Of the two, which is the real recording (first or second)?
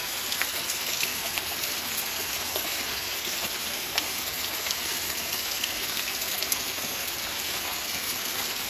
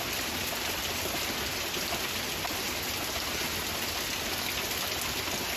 second